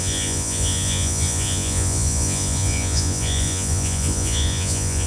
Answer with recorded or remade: remade